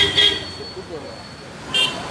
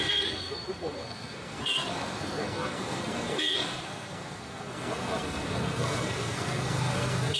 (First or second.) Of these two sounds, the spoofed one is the second